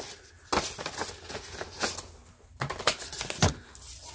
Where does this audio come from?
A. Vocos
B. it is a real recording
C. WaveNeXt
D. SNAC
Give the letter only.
B